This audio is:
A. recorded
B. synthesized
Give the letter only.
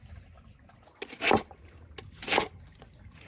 A